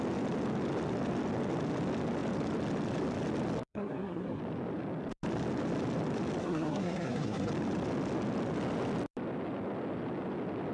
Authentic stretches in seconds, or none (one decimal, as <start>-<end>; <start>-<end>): 0.0-3.7; 4.4-6.4; 7.5-10.7